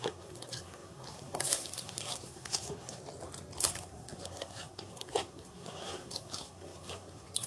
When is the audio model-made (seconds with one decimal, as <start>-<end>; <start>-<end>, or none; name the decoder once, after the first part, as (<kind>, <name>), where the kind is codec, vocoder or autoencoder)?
0.0-3.0 (codec, SNAC); 3.6-7.5

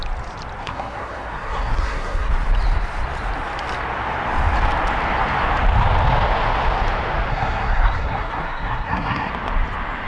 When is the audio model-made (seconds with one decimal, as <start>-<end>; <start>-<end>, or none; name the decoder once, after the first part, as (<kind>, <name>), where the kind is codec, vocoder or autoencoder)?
0.6-2.3 (codec, SNAC); 7.3-9.3

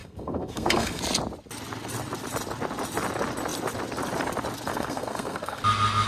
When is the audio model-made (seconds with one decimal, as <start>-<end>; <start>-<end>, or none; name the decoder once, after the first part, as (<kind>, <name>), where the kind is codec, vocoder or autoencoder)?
0.0-1.0 (codec, SNAC); 4.7-5.6

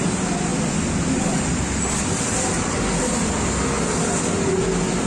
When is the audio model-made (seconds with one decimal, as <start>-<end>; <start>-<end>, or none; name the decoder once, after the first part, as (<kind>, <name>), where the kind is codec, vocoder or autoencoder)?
none

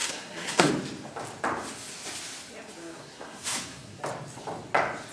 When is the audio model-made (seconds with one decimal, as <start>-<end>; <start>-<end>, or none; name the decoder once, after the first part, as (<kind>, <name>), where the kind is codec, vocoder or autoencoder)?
0.0-0.7 (codec, SNAC); 2.8-4.0

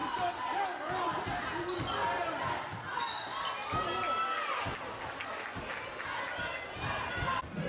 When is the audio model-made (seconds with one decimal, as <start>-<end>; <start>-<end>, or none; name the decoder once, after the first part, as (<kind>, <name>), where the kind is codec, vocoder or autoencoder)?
none

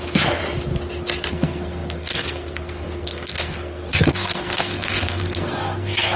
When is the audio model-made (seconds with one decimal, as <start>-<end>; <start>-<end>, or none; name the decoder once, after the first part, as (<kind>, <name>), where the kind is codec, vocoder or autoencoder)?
0.0-0.4 (codec, SNAC); 1.3-6.2

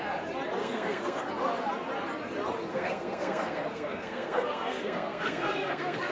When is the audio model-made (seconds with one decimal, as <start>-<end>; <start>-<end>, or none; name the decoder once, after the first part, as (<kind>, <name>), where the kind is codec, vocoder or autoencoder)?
0.6-1.2 (codec, SNAC); 2.7-6.1